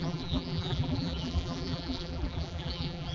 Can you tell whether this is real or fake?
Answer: fake